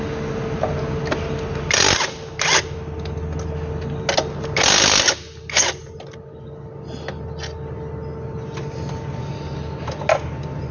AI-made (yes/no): no